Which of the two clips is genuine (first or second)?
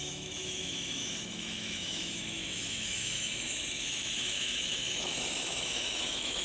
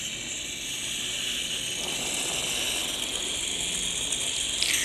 second